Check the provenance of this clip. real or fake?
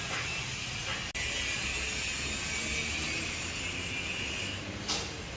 real